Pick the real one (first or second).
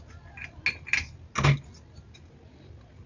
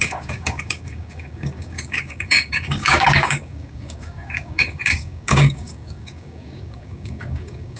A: first